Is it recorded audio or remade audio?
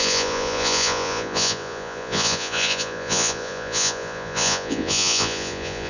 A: remade